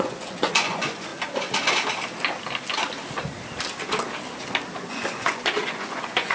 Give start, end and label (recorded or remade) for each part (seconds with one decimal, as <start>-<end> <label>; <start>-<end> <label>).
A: 0.0-1.1 remade; 1.1-4.9 recorded; 4.9-6.3 remade

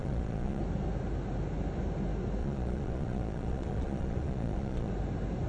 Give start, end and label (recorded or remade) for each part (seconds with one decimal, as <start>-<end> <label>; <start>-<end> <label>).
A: 0.0-0.6 remade; 0.6-2.4 recorded; 2.4-4.9 remade; 4.9-5.5 recorded

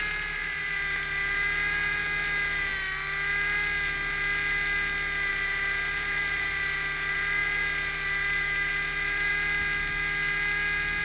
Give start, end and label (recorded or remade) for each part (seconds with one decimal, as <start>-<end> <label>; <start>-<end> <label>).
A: 0.0-2.0 remade; 2.0-5.3 recorded; 5.3-9.3 remade; 9.3-11.0 recorded

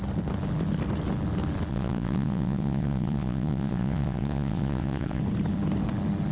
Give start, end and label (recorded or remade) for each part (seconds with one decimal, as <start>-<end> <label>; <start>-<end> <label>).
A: 0.0-1.7 recorded; 1.7-5.2 remade; 5.2-6.3 recorded

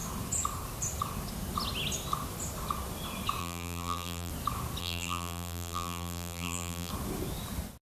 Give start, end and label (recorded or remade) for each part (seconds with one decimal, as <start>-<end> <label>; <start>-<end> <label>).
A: 0.0-3.4 recorded; 3.4-4.3 remade; 4.3-4.8 recorded; 4.8-6.9 remade; 6.9-7.9 recorded

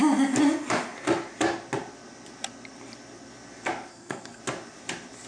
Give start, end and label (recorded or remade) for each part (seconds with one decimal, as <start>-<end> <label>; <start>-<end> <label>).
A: 0.0-3.9 recorded; 3.9-4.4 remade; 4.4-5.3 recorded